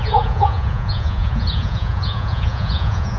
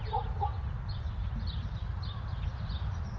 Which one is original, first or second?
second